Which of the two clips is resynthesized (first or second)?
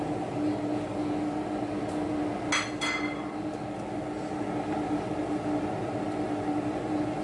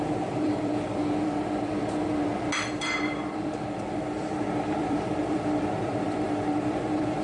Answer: second